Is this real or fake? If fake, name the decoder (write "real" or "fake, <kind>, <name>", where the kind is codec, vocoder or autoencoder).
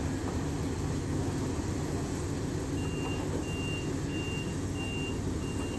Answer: real